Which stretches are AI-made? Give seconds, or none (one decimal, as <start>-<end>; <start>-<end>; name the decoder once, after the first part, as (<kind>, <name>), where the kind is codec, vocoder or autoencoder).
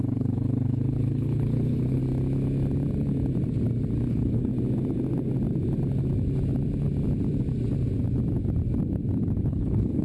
0.0-2.0 (codec, HILCodec); 4.1-4.5; 9.5-10.0